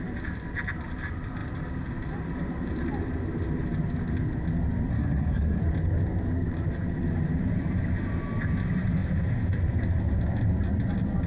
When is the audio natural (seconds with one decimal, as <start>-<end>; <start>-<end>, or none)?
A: 0.0-4.9; 5.6-11.3